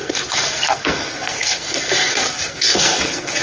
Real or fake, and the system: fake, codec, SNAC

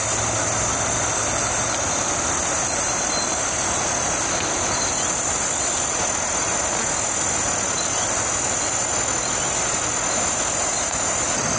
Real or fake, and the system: real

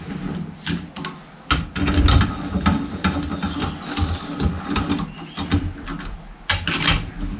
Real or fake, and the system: real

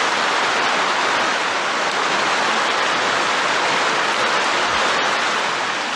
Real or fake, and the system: real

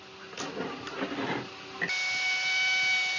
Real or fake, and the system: real